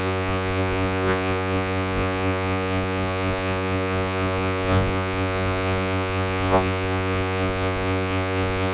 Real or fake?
fake